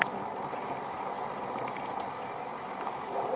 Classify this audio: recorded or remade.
recorded